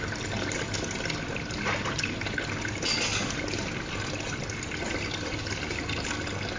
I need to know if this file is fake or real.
real